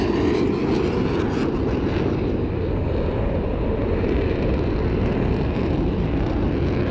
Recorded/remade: recorded